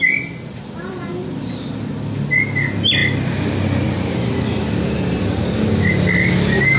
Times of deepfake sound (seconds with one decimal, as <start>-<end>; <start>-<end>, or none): none